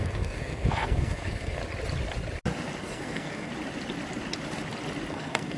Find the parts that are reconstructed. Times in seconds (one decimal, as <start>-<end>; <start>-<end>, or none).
0.0-1.6; 2.8-3.5; 5.1-5.6